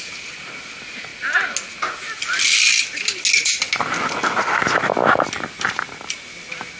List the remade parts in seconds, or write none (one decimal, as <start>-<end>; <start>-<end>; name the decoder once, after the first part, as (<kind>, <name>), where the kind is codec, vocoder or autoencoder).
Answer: none